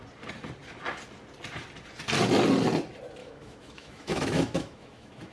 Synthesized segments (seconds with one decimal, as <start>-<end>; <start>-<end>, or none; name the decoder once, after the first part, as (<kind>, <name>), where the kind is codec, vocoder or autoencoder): 3.2-5.3 (autoencoder, DAC-VAE)